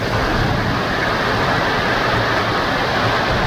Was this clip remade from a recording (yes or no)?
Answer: no